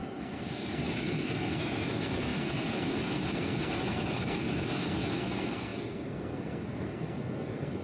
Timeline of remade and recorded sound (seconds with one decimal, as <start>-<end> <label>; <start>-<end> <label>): 0.0-7.8 remade